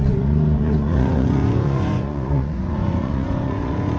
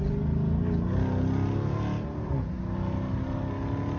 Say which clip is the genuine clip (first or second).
second